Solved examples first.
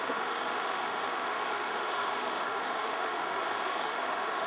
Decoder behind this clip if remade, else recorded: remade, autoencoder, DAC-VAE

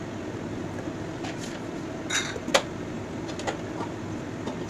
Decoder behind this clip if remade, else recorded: recorded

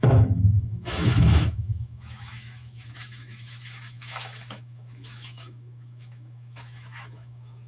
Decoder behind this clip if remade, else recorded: remade, autoencoder, DAC-VAE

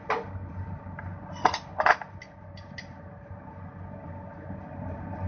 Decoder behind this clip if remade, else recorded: recorded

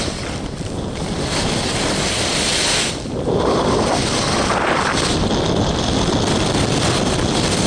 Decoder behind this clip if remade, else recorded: recorded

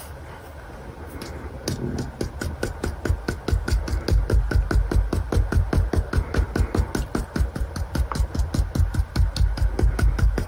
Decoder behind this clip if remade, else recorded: recorded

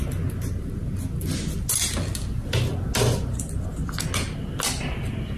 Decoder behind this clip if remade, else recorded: recorded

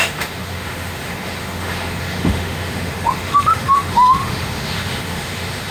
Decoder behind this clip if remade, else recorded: remade, autoencoder, DAC-VAE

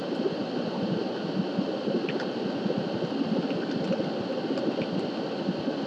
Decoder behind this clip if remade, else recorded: recorded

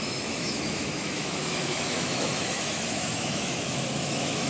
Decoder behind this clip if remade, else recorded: remade, autoencoder, DAC-VAE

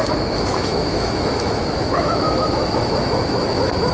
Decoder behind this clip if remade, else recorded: remade, autoencoder, DAC-VAE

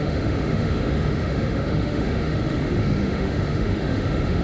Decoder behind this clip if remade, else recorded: remade, autoencoder, DAC-VAE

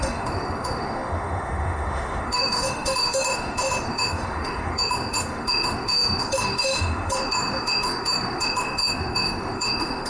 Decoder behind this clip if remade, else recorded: remade, autoencoder, DAC-VAE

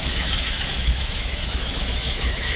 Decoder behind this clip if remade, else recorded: remade, autoencoder, DAC-VAE